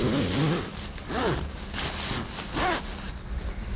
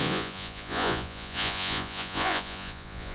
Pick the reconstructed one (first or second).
second